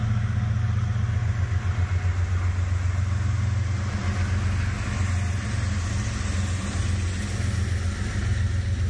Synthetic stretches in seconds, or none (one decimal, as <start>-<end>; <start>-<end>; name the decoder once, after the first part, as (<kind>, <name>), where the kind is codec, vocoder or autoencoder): none